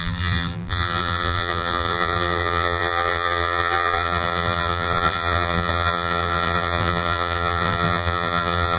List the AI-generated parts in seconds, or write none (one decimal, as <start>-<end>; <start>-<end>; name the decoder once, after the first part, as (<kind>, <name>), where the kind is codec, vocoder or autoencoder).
0.0-8.8 (vocoder, BigVGAN v2)